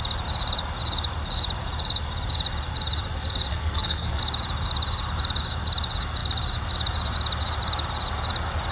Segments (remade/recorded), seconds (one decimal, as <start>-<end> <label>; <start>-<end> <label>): 0.0-3.5 recorded; 3.5-4.2 remade; 4.2-8.7 recorded